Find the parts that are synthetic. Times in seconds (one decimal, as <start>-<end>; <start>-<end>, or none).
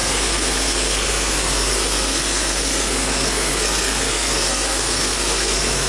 0.0-5.9